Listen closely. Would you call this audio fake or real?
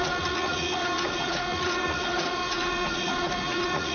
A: fake